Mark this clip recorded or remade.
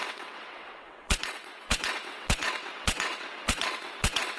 remade